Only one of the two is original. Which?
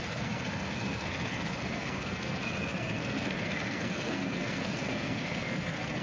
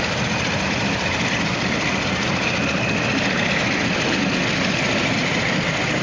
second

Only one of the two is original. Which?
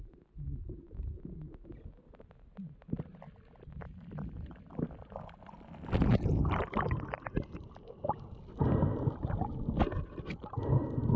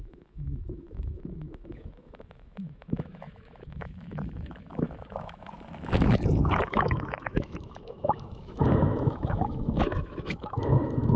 first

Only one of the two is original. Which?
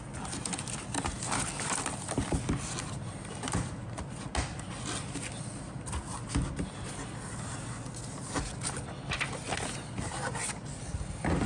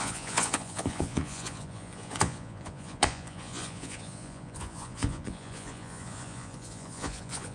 first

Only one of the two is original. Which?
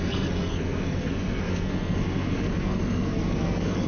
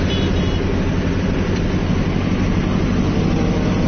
second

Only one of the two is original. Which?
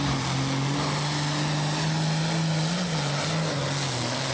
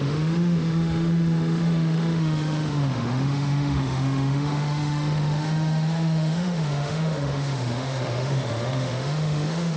first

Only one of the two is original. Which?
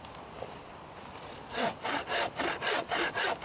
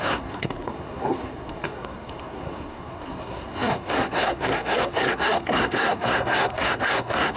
first